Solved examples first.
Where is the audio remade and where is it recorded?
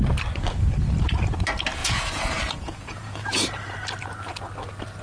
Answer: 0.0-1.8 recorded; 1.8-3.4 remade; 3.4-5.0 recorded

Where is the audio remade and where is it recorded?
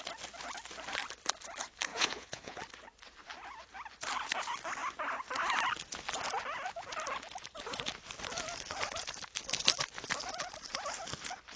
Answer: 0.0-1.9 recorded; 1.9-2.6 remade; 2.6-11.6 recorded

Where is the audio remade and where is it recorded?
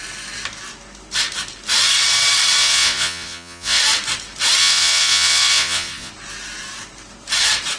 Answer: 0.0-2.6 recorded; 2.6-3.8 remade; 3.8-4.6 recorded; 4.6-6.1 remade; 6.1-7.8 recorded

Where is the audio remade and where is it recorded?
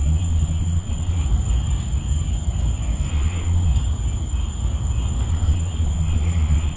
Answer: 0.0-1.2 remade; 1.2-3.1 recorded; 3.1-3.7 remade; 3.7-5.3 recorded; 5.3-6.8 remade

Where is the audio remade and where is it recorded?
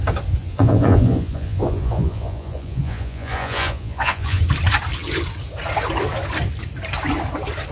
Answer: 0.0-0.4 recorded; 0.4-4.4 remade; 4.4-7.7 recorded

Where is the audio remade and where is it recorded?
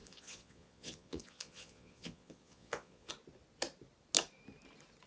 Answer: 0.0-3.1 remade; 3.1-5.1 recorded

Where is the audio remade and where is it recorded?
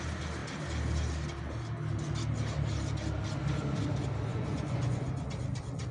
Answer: 0.0-4.3 recorded; 4.3-5.0 remade; 5.0-5.9 recorded